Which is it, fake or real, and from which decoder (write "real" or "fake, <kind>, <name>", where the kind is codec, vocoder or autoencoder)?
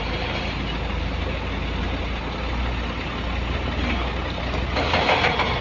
real